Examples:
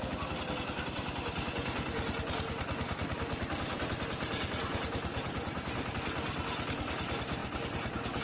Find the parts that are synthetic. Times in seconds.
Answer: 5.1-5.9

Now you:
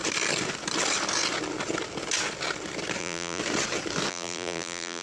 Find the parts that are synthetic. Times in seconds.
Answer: 3.0-3.4; 4.1-5.0

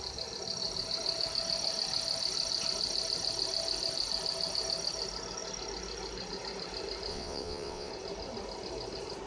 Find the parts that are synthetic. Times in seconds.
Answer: 7.1-7.9

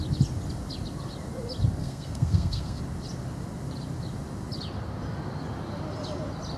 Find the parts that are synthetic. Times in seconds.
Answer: 1.8-2.8

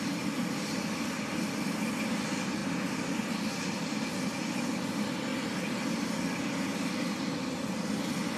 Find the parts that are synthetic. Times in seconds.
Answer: none

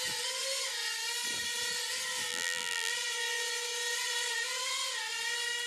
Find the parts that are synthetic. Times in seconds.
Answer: 2.3-2.9

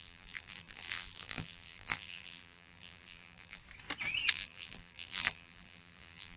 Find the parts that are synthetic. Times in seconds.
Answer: 0.0-3.6; 4.3-6.4